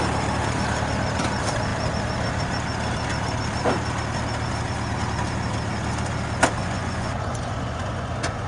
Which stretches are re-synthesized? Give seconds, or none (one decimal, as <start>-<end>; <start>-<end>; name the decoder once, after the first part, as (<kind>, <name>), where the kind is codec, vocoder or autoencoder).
6.6-8.5 (vocoder, Vocos)